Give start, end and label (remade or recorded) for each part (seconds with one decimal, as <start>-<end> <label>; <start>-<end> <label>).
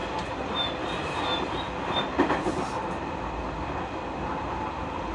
0.0-5.1 recorded